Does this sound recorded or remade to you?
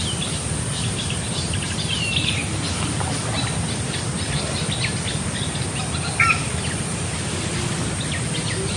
remade